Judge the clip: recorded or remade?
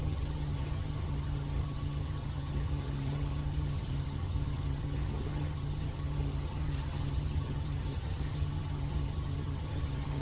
remade